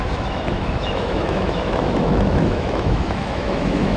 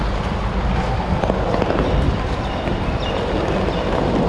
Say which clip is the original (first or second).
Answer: second